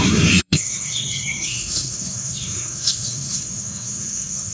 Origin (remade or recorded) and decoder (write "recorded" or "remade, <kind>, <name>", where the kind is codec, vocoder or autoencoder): remade, codec, SNAC